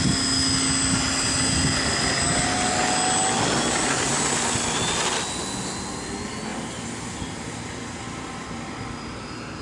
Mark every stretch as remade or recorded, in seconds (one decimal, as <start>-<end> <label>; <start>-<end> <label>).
0.0-9.6 recorded